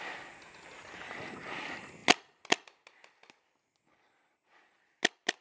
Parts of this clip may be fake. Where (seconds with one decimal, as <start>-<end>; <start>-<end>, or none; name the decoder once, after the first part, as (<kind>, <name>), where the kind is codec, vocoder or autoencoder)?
none